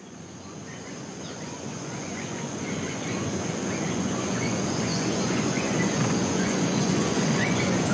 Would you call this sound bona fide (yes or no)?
no